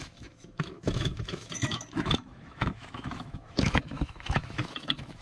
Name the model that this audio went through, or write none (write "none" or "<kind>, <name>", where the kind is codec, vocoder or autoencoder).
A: autoencoder, DAC-VAE